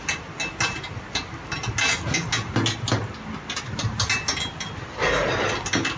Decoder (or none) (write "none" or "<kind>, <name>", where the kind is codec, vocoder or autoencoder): none